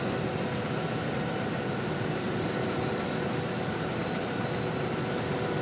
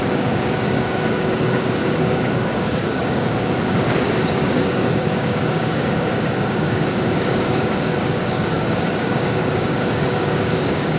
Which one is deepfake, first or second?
second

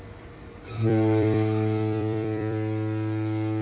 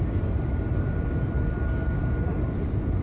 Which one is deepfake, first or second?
first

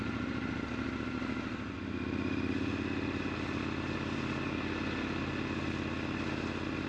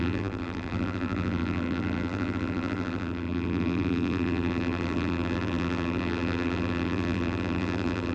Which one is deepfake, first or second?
second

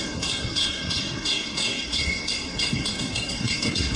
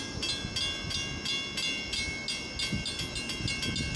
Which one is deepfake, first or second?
first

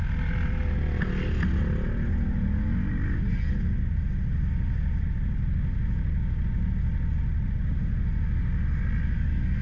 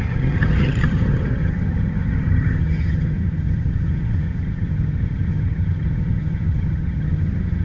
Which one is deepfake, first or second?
second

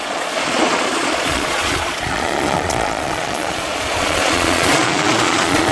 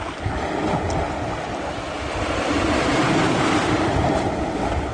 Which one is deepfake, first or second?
first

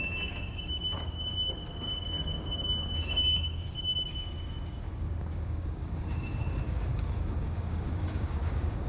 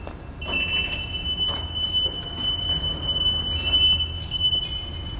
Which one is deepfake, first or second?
first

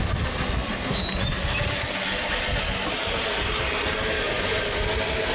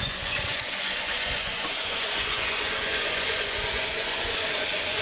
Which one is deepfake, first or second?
second